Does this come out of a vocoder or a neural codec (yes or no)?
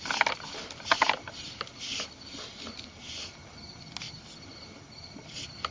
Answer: no